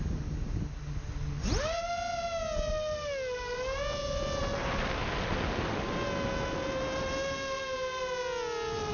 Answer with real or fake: real